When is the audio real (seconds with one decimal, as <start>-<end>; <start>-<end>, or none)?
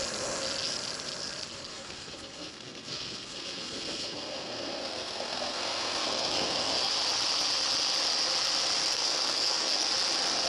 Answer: 0.0-1.7; 6.9-8.9; 9.9-10.5